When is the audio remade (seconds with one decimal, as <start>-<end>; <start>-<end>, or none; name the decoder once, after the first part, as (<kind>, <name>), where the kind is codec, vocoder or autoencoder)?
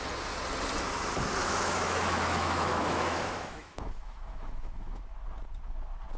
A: 1.4-5.1 (autoencoder, DAC-VAE)